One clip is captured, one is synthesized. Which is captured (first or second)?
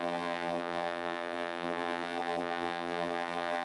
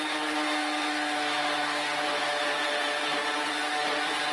second